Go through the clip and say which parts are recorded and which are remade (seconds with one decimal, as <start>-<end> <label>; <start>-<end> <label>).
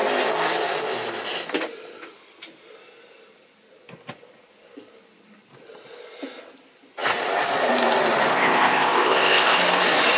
0.0-8.3 recorded; 8.3-9.6 remade; 9.6-10.2 recorded